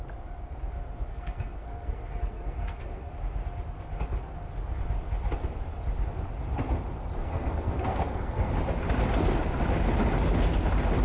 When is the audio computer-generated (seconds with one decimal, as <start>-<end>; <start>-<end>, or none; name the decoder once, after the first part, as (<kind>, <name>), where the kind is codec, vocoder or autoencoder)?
1.1-3.1 (codec, SNAC); 7.2-8.5